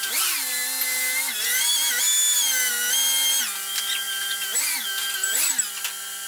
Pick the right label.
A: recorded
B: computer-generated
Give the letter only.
A